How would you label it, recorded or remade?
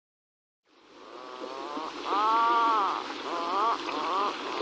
recorded